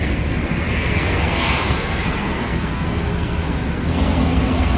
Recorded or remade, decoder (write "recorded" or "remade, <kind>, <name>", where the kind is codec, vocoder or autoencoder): remade, codec, SNAC